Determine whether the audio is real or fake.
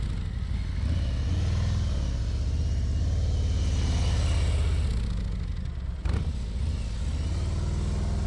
real